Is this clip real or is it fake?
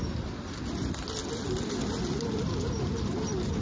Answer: real